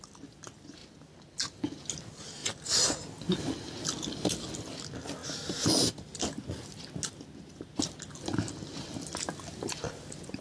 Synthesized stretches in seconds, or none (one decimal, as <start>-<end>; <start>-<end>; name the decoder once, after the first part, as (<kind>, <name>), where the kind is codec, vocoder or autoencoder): none

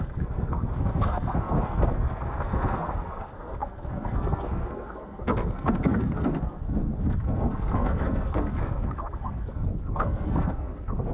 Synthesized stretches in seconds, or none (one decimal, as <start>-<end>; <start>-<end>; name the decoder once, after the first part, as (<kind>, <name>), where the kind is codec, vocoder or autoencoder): 0.0-11.1 (codec, SNAC)

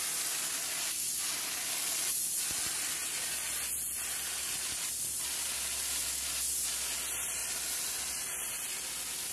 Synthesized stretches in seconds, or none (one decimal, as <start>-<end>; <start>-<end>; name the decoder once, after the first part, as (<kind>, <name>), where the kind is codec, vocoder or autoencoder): none